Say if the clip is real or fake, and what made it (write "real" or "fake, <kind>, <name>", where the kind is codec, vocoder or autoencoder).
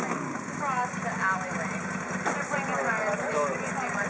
real